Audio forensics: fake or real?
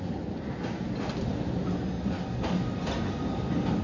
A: real